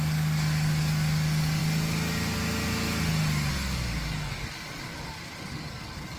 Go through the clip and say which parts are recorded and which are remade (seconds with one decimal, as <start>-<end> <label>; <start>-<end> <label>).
0.0-1.6 remade; 1.6-3.5 recorded; 3.5-4.9 remade; 4.9-5.5 recorded; 5.5-6.2 remade